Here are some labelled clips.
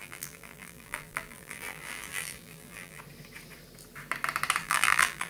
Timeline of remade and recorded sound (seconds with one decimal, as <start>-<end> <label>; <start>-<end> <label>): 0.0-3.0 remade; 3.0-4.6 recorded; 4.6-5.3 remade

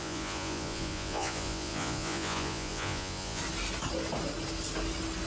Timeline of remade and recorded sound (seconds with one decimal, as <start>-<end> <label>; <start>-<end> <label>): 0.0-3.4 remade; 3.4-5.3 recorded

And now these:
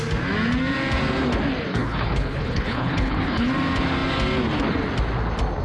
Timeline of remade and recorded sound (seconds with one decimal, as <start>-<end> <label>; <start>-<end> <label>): 0.0-1.7 recorded; 1.7-3.5 remade; 3.5-5.6 recorded

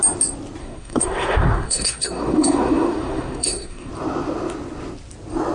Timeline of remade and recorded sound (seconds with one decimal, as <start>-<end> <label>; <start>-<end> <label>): 0.0-0.6 recorded; 0.6-3.9 remade; 3.9-5.5 recorded